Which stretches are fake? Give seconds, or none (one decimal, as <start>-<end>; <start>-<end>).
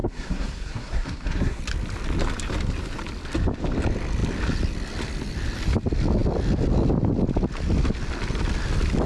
0.0-1.6